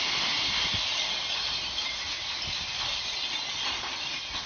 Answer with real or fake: real